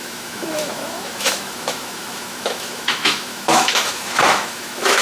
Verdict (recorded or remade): remade